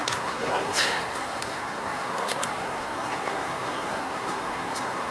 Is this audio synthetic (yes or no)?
yes